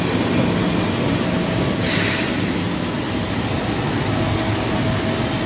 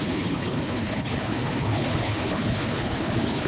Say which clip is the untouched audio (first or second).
first